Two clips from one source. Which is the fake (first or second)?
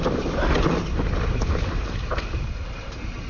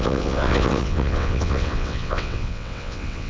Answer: second